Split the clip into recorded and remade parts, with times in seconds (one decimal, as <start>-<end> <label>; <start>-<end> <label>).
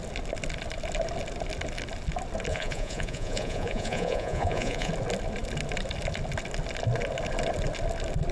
0.0-2.5 recorded; 2.5-4.9 remade; 4.9-8.3 recorded